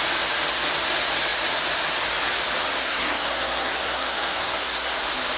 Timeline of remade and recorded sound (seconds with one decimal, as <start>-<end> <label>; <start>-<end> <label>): 0.0-2.8 recorded; 2.8-4.9 remade; 4.9-5.4 recorded